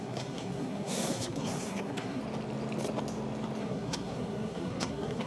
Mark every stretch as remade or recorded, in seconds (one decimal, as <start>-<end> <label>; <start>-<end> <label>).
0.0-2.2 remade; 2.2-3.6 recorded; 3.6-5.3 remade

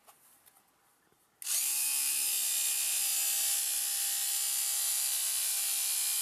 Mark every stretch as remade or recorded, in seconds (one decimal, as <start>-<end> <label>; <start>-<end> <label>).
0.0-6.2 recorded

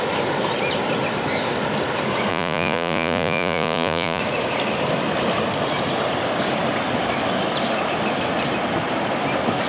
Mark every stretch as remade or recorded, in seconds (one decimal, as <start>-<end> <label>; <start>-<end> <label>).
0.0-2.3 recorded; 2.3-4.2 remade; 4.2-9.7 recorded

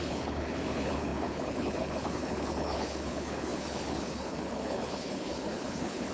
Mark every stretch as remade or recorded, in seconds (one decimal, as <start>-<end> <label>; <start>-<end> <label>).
0.0-6.1 remade

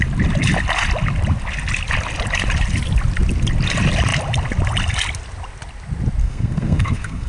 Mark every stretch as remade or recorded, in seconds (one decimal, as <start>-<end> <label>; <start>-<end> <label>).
0.0-6.2 recorded; 6.2-7.3 remade

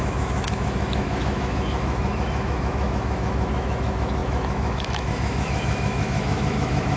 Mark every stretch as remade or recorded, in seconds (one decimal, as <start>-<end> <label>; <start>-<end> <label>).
0.0-7.0 remade

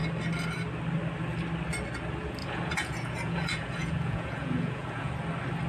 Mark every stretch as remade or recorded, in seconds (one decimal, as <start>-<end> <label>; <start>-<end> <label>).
0.0-2.4 recorded; 2.4-5.1 remade; 5.1-5.7 recorded